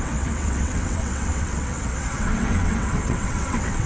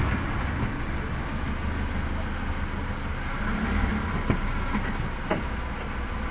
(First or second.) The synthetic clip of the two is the first